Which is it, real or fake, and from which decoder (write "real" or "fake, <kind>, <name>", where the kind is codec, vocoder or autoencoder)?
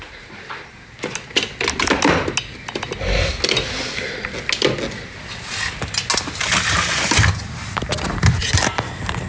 real